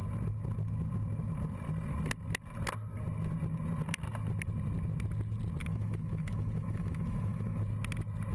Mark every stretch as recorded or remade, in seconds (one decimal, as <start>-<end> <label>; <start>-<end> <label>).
0.0-5.6 recorded; 5.6-7.6 remade; 7.6-8.3 recorded